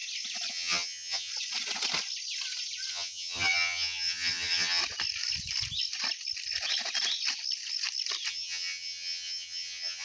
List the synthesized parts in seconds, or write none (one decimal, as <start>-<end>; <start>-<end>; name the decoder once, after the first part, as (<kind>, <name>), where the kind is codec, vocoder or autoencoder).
0.5-1.3 (vocoder, HiFi-GAN); 2.9-4.8; 8.3-10.0

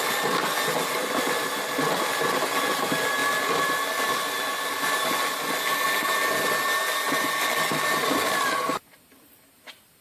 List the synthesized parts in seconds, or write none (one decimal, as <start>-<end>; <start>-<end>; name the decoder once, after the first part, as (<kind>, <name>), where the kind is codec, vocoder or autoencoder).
none

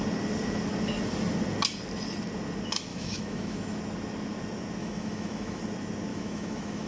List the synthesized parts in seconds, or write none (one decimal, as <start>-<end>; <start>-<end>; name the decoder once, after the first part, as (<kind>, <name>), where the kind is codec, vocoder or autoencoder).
2.9-3.8 (autoencoder, DAC-VAE); 4.8-5.6; 6.1-6.9

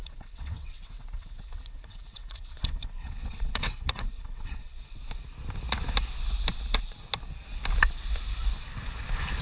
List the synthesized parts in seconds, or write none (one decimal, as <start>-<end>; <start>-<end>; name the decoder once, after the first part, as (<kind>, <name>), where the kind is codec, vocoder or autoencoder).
0.0-5.0 (vocoder, WaveNeXt)